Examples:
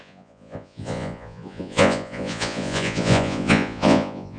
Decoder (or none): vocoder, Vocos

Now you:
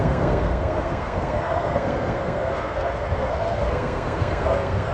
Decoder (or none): codec, SNAC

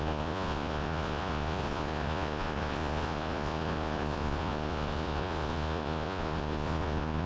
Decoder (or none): vocoder, Vocos